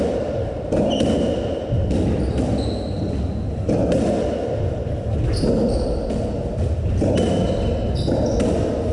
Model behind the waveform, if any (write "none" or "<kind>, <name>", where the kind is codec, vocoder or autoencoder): none